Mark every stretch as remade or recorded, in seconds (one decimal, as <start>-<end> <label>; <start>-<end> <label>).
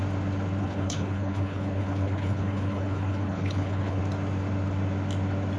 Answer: 0.0-0.6 recorded; 0.6-4.0 remade; 4.0-5.6 recorded